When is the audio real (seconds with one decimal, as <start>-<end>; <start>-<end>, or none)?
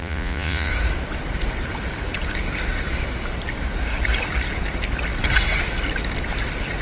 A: 0.7-6.8